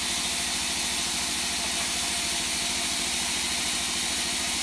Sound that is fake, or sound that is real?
real